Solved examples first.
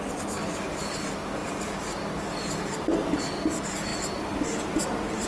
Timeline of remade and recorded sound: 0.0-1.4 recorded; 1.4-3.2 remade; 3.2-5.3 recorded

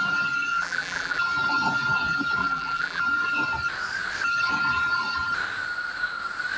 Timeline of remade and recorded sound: 0.0-0.5 recorded; 0.5-1.2 remade; 1.2-2.4 recorded; 2.4-3.0 remade; 3.0-6.6 recorded

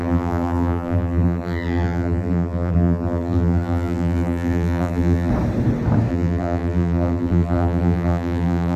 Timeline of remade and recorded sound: 0.0-5.3 remade; 5.3-6.1 recorded; 6.1-8.8 remade

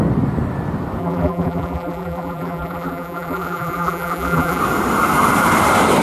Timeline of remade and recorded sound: 0.0-1.0 recorded; 1.0-4.6 remade; 4.6-6.0 recorded

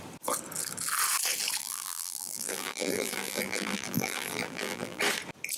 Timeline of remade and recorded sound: 0.0-1.6 recorded; 1.6-5.0 remade; 5.0-5.6 recorded

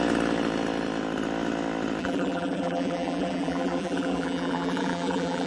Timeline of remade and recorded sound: 0.0-2.0 recorded; 2.0-5.5 remade

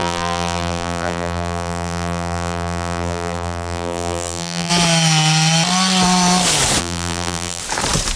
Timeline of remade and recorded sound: 0.0-4.7 remade; 4.7-6.8 recorded; 6.8-7.6 remade; 7.6-8.2 recorded